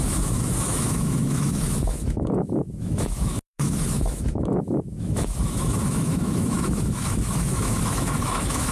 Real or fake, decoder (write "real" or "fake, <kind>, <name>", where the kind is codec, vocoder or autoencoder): fake, autoencoder, DAC-VAE